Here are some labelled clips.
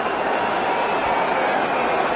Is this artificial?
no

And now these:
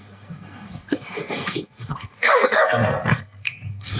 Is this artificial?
yes